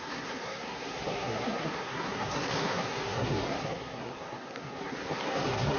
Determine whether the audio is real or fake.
fake